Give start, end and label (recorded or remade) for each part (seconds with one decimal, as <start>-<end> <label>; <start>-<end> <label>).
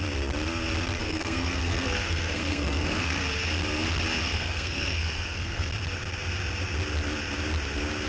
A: 0.0-1.0 recorded; 1.0-3.2 remade; 3.2-4.2 recorded; 4.2-5.7 remade; 5.7-8.1 recorded